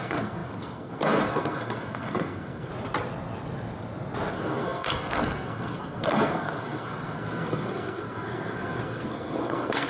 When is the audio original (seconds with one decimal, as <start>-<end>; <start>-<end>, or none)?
2.7-4.3